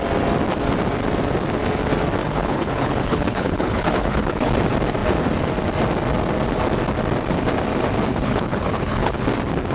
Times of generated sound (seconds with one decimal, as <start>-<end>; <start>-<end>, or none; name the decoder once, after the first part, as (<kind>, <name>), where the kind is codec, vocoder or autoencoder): 2.2-4.5 (codec, HILCodec); 8.1-9.2